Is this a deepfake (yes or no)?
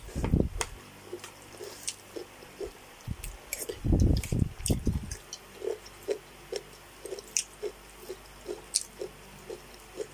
yes